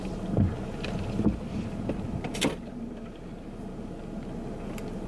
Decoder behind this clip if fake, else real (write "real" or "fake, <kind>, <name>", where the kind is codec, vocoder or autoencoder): real